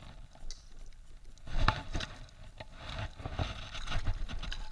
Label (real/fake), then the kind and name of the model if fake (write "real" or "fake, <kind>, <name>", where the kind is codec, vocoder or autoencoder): real